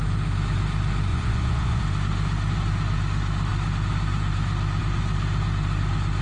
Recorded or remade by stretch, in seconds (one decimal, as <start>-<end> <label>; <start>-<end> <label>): 0.0-1.1 recorded; 1.1-1.8 remade; 1.8-6.2 recorded